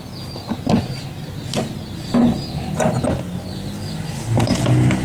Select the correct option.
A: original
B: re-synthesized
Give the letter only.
A